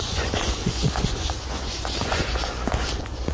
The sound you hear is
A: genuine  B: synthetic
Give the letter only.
B